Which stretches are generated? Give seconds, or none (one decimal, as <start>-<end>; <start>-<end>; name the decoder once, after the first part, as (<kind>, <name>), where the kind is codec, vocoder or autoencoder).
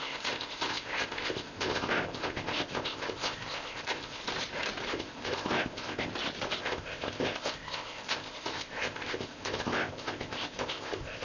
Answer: 0.0-4.2 (codec, ZipCodec); 4.9-6.1; 6.6-11.2